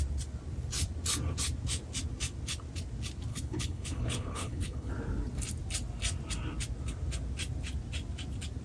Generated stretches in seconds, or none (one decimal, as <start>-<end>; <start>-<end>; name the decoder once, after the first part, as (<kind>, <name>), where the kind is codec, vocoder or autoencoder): 3.3-4.9 (codec, HILCodec)